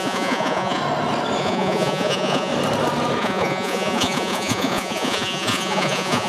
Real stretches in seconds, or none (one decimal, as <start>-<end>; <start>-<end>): 0.8-1.4; 2.5-3.2